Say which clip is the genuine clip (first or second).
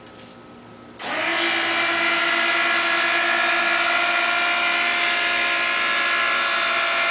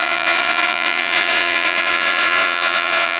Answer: first